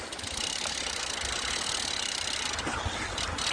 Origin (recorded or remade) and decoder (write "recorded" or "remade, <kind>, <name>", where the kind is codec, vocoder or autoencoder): recorded